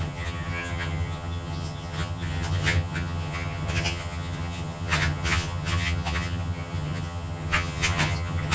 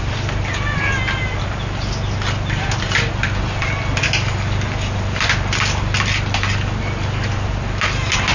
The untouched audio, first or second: second